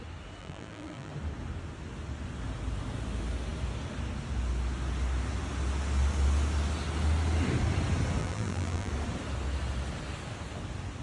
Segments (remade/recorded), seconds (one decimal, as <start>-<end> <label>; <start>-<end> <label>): 0.0-0.4 recorded; 0.4-1.1 remade; 1.1-8.2 recorded; 8.2-8.9 remade; 8.9-11.0 recorded